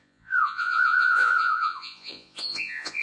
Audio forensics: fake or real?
fake